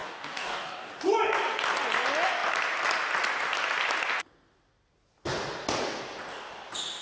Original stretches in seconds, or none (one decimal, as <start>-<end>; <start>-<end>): 0.9-7.0